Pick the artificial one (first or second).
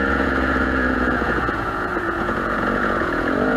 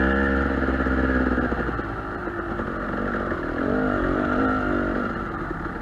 first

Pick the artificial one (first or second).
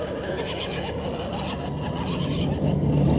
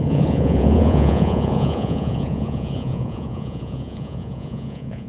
second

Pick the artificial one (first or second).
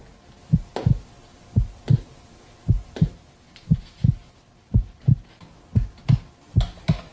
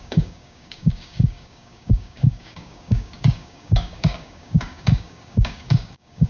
second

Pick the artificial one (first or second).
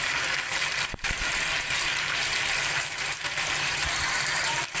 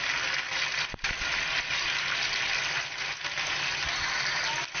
first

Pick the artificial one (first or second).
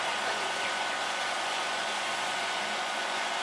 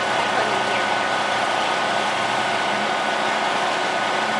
first